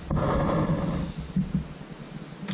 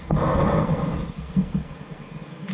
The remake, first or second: second